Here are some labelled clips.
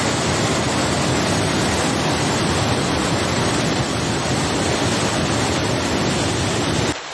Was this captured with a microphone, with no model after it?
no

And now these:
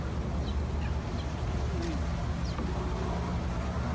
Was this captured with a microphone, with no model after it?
yes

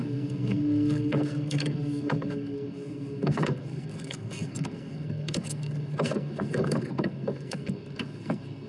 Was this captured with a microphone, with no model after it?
no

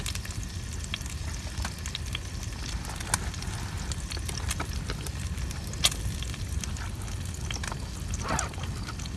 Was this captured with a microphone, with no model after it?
yes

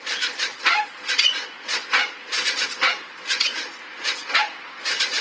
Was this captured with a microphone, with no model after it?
no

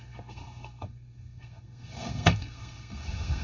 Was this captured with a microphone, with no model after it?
no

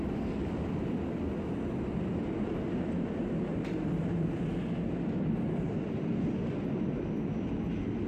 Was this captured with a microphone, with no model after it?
yes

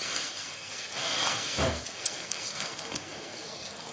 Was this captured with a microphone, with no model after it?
no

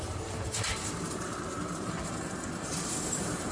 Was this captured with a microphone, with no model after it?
no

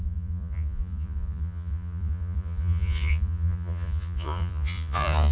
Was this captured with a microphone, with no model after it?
no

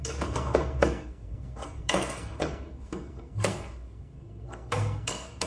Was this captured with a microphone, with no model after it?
no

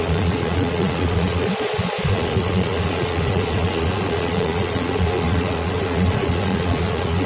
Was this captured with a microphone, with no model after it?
no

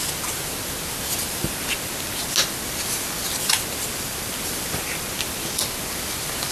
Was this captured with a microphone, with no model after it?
yes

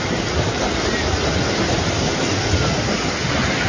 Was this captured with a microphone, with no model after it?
yes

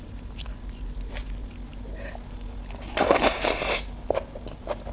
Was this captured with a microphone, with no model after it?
yes